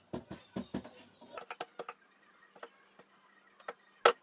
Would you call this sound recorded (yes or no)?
yes